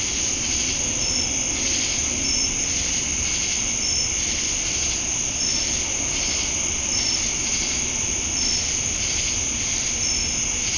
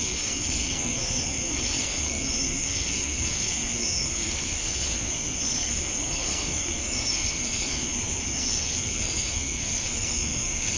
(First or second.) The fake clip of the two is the second